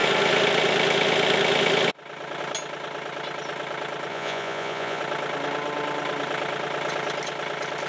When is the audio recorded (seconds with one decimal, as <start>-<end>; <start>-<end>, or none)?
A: 0.0-4.1; 5.0-7.9